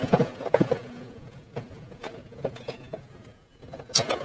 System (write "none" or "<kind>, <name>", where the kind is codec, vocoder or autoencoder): vocoder, Vocos